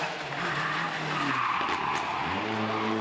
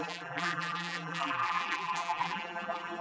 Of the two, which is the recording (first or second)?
first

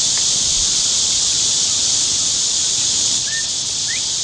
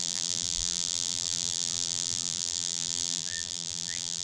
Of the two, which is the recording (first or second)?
first